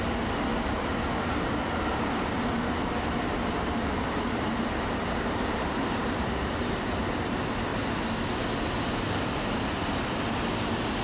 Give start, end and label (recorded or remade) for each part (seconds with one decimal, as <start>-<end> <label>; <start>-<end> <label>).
0.0-1.9 recorded; 1.9-7.1 remade; 7.1-7.7 recorded; 7.7-8.2 remade; 8.2-11.0 recorded